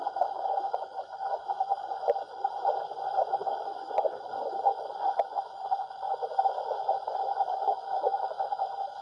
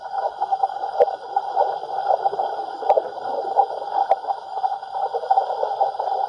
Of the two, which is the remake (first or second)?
first